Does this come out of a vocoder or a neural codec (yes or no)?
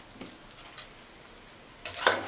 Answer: no